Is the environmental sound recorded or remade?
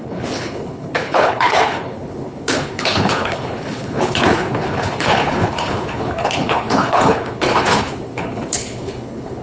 remade